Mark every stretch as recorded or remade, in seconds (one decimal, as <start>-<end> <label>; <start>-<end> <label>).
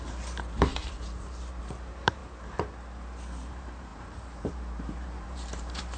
0.0-2.2 remade; 2.2-3.5 recorded; 3.5-6.0 remade